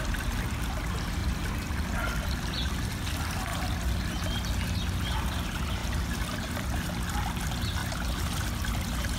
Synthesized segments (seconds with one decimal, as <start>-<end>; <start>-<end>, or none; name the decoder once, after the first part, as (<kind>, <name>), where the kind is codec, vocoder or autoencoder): 1.2-2.9 (vocoder, BigVGAN v2); 5.8-6.9